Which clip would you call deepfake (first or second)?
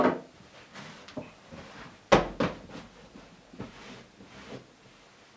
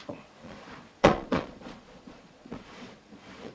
second